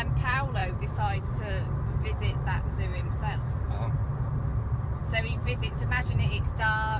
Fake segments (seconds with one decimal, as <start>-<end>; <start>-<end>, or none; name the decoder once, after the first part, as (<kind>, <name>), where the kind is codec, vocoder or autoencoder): none